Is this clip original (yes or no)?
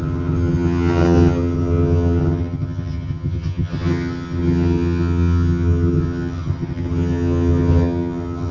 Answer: no